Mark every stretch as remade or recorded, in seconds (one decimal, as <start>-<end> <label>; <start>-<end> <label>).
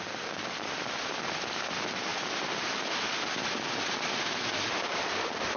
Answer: 0.0-5.6 recorded